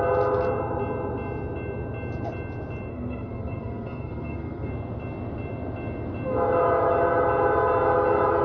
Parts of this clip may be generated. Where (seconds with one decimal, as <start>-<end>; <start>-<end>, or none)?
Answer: 2.9-4.7